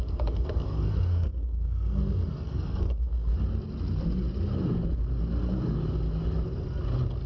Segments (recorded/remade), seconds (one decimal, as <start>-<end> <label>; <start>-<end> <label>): 0.0-3.3 remade; 3.3-7.3 recorded